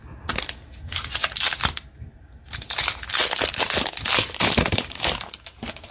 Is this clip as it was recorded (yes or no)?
yes